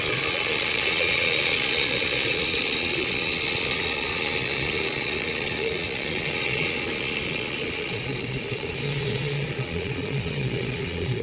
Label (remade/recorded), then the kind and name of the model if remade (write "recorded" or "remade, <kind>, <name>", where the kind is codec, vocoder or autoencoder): remade, vocoder, Vocos